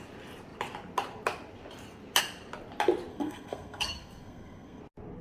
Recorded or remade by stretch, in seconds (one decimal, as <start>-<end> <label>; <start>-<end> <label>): 0.0-3.1 recorded; 3.1-4.8 remade; 4.8-5.2 recorded